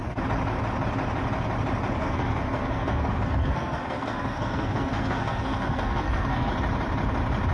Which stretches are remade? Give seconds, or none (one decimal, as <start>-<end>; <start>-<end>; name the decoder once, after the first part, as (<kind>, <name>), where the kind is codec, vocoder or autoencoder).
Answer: 2.0-6.5 (codec, SNAC)